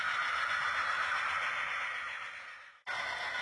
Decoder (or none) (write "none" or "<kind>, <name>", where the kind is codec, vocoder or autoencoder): none